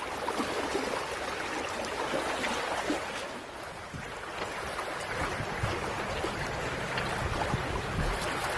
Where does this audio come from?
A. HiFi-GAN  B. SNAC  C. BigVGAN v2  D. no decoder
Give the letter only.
D